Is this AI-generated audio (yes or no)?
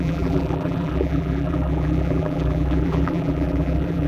yes